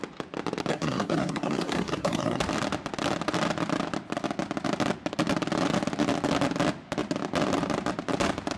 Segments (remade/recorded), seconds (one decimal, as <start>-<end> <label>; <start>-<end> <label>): 0.0-0.7 recorded; 0.7-2.4 remade; 2.4-8.6 recorded